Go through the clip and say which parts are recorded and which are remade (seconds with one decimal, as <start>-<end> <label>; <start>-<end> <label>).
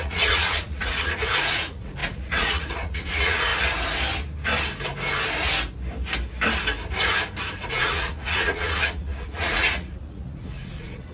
0.0-3.5 remade; 3.5-7.7 recorded; 7.7-11.1 remade